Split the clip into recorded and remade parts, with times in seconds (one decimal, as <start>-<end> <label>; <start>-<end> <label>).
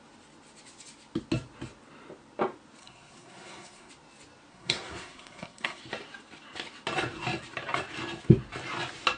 0.0-2.8 recorded; 2.8-3.9 remade; 3.9-4.5 recorded; 4.5-5.8 remade; 5.8-9.2 recorded